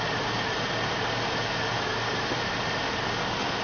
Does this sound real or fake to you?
real